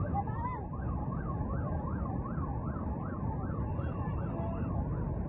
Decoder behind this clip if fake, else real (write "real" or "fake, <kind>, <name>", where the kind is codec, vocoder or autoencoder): real